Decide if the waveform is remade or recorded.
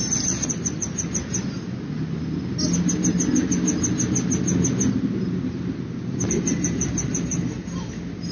recorded